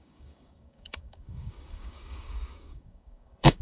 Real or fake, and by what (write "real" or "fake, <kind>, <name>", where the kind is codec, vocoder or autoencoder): fake, codec, DAC